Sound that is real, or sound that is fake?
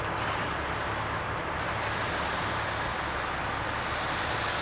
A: real